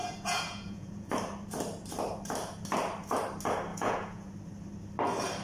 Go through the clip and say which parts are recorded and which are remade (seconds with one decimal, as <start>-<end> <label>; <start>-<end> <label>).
0.0-1.1 remade; 1.1-3.7 recorded; 3.7-4.3 remade; 4.3-5.4 recorded